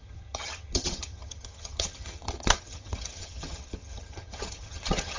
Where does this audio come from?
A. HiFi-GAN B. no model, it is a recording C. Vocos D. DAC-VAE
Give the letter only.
A